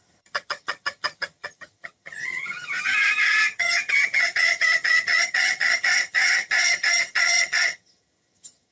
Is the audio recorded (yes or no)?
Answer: no